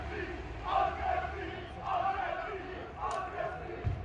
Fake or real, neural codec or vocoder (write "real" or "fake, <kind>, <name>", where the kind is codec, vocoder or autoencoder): real